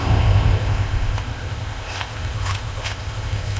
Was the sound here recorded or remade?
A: remade